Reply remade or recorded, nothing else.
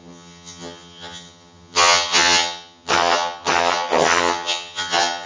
remade